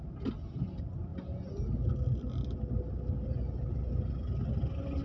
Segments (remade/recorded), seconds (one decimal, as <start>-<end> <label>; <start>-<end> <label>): 0.0-5.0 recorded